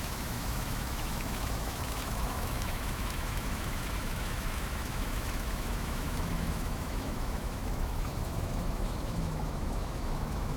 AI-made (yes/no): yes